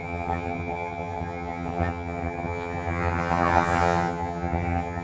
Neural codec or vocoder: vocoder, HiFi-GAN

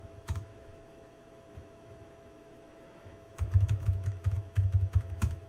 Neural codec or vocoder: autoencoder, DAC-VAE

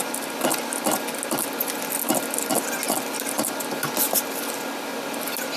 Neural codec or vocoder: none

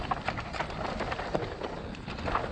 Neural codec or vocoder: none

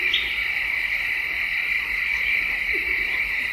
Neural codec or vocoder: none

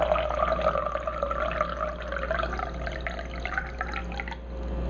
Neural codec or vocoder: none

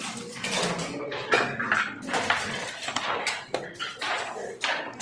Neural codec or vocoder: none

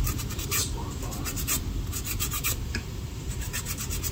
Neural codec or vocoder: vocoder, BigVGAN v2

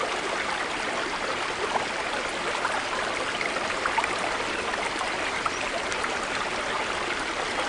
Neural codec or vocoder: none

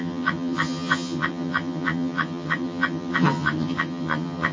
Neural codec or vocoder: vocoder, HiFi-GAN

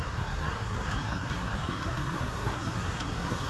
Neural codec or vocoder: codec, SNAC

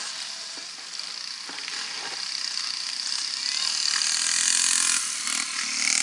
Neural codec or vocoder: none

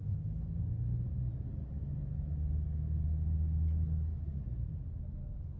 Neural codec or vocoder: none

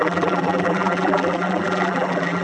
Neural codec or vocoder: vocoder, BigVGAN v2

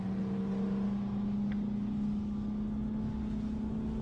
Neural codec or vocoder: none